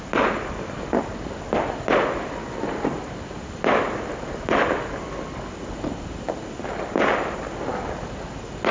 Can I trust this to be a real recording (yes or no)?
yes